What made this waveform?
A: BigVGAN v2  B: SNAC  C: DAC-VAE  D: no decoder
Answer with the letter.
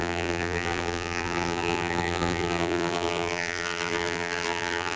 A